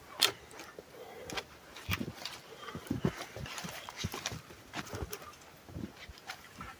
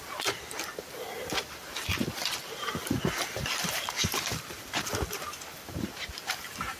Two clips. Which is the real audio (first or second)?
first